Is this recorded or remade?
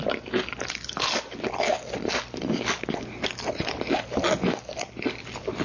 recorded